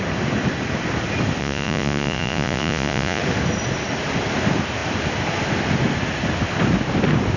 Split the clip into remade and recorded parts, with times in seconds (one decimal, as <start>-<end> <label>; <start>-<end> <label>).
0.0-1.4 recorded; 1.4-3.2 remade; 3.2-7.4 recorded